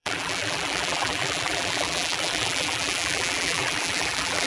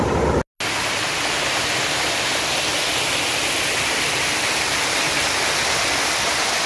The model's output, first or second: first